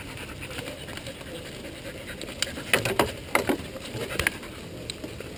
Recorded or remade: recorded